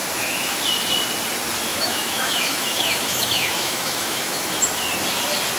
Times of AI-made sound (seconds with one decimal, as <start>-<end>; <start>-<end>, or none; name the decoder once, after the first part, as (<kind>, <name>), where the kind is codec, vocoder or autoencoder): 0.0-0.6 (autoencoder, DAC-VAE); 1.7-4.4